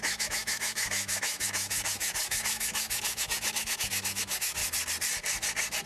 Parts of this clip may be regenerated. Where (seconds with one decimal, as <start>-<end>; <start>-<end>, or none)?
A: 0.0-4.6